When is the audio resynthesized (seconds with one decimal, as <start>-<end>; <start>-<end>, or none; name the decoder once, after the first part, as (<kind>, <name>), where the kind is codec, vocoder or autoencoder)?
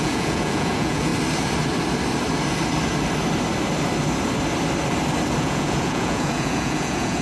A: 0.0-1.1 (vocoder, Vocos); 5.4-7.2